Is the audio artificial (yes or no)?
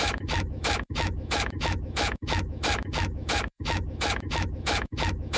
yes